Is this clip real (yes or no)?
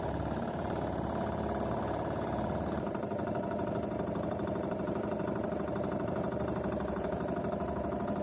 no